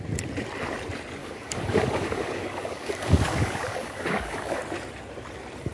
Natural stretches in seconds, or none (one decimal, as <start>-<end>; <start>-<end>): 0.0-1.2; 4.6-5.7